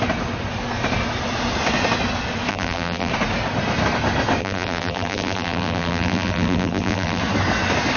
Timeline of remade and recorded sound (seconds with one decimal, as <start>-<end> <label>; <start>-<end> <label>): 0.0-2.5 recorded; 2.5-3.1 remade; 3.1-4.4 recorded; 4.4-7.2 remade; 7.2-8.0 recorded